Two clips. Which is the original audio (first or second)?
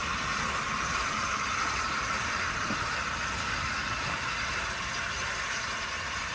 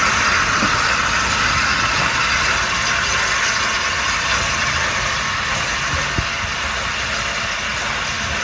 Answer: second